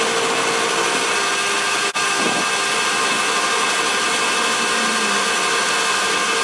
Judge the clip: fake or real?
real